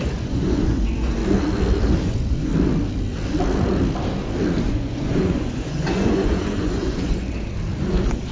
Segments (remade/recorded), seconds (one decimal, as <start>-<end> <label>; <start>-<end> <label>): 0.0-1.2 remade; 1.2-2.0 recorded; 2.0-2.5 remade; 2.5-4.7 recorded; 4.7-7.3 remade; 7.3-7.8 recorded; 7.8-8.3 remade